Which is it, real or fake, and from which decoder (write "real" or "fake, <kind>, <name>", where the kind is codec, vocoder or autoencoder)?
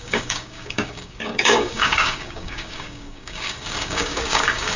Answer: fake, codec, DAC